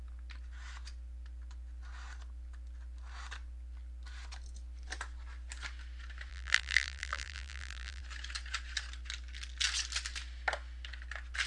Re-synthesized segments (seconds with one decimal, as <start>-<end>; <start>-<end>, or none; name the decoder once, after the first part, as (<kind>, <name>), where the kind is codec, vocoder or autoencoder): 6.3-8.0 (vocoder, BigVGAN v2)